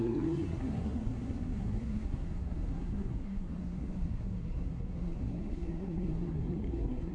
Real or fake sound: fake